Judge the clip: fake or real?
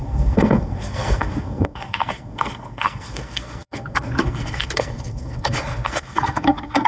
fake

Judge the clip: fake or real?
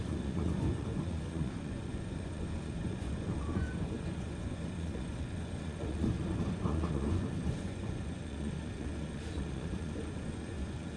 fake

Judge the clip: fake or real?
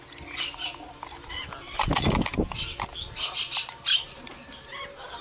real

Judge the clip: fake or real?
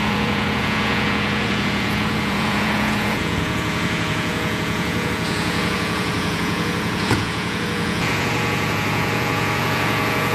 fake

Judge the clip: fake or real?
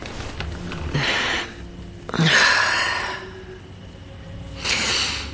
real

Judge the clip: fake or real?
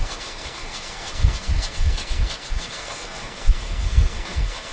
fake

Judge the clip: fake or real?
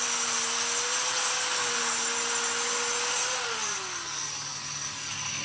real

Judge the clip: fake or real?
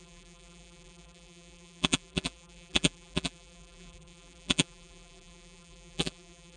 fake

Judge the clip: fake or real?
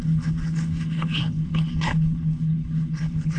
fake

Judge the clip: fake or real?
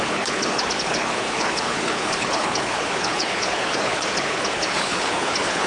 fake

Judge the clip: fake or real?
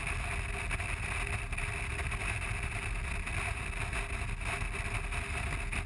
real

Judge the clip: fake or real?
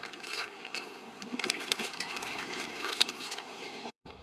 fake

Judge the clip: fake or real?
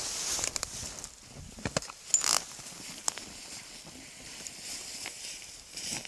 real